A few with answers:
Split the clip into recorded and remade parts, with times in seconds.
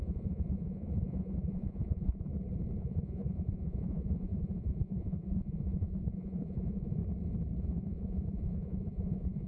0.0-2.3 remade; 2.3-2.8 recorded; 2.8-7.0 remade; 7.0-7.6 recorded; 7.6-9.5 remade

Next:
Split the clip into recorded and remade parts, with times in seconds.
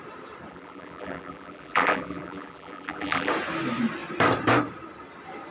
0.0-0.5 recorded; 0.5-3.3 remade; 3.3-5.5 recorded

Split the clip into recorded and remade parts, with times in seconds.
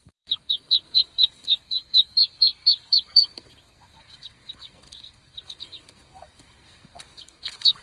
0.0-7.8 remade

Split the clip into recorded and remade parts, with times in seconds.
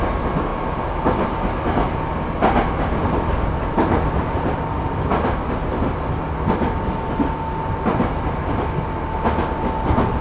0.0-10.2 recorded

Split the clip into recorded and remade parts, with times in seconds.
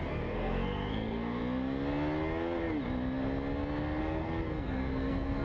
0.0-1.4 remade; 1.4-4.0 recorded; 4.0-5.4 remade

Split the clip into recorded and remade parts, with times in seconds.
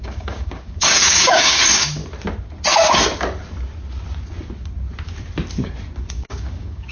0.0-2.0 remade; 2.0-6.1 recorded; 6.1-6.9 remade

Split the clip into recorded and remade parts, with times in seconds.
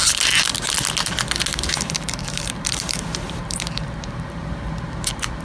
0.0-1.5 recorded; 1.5-4.7 remade; 4.7-5.4 recorded